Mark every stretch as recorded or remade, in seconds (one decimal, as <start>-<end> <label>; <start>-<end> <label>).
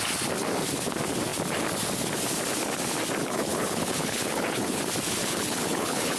0.0-3.2 recorded; 3.2-4.8 remade; 4.8-5.2 recorded; 5.2-6.2 remade